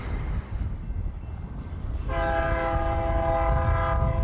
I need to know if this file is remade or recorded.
recorded